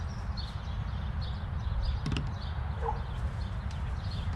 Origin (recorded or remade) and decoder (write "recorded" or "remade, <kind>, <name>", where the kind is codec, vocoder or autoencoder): recorded